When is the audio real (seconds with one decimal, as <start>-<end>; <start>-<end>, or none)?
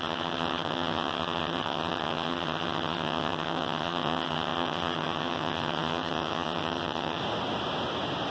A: 7.2-8.3